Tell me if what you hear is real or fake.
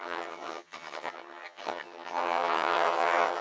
fake